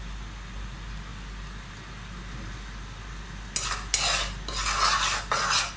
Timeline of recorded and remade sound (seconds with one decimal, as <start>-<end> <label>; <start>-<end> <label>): 0.0-5.8 recorded